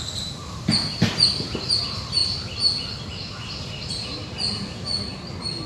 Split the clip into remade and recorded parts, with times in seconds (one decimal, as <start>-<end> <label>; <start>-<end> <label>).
0.0-5.7 recorded